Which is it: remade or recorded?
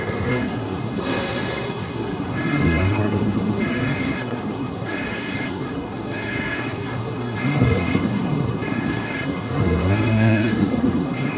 remade